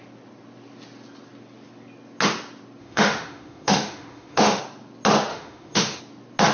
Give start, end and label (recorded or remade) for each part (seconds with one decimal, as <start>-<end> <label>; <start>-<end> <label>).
0.0-2.8 recorded; 2.8-4.6 remade; 4.6-5.3 recorded; 5.3-6.0 remade; 6.0-6.5 recorded